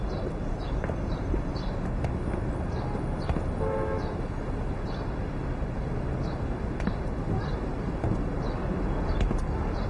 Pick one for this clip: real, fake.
real